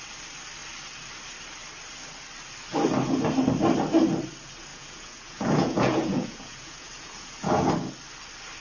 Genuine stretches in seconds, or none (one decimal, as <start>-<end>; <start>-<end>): 0.0-4.7; 7.7-8.6

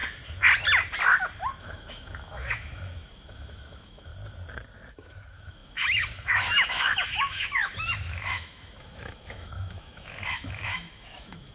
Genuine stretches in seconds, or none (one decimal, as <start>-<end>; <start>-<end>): 0.0-1.6; 4.1-4.9

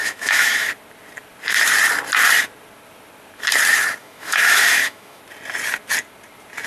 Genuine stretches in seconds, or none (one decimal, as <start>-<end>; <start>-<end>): 0.7-4.0; 5.2-6.7

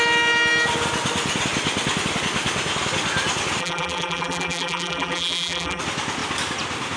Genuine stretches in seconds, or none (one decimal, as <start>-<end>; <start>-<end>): 0.0-3.6; 5.8-7.0